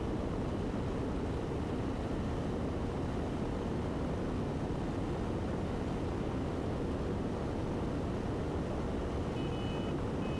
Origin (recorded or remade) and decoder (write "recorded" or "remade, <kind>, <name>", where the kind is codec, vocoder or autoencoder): recorded